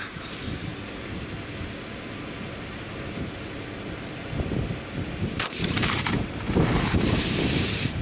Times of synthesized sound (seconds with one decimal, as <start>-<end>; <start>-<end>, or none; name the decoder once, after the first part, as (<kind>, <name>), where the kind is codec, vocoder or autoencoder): 0.0-0.7 (vocoder, BigVGAN v2); 5.2-8.0